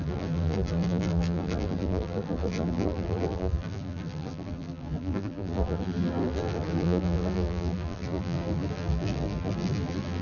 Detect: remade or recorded remade